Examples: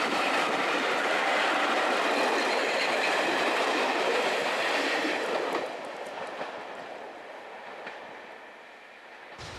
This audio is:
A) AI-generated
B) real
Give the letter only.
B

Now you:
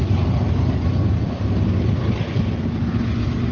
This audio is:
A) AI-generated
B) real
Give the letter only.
B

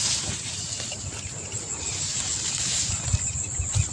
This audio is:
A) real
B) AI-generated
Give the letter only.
A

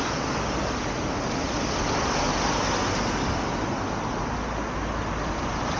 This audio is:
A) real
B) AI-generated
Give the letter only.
A